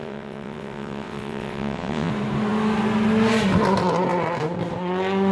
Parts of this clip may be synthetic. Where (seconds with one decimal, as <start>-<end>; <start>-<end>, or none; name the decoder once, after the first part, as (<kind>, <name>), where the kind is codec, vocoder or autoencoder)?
0.0-2.1 (vocoder, WaveNeXt)